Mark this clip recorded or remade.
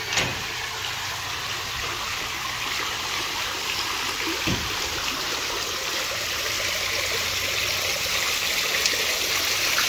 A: recorded